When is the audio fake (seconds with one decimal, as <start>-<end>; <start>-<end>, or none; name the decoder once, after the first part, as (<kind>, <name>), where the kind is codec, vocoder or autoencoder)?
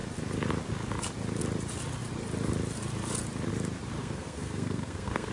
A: 4.0-5.3 (codec, SNAC)